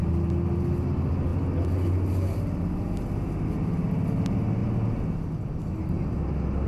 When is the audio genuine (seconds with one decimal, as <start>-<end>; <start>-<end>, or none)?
0.0-6.7